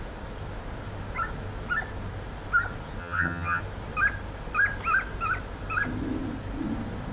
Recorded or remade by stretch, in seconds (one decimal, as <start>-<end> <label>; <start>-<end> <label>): 0.0-3.0 recorded; 3.0-3.6 remade; 3.6-7.1 recorded